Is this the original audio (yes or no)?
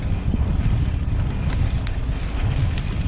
yes